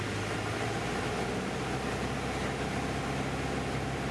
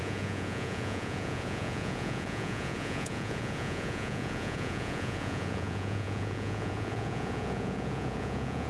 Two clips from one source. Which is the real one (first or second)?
first